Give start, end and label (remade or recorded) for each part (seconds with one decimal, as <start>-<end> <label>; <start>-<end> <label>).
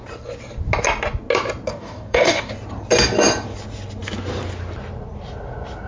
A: 0.0-1.7 recorded; 1.7-2.5 remade; 2.5-5.9 recorded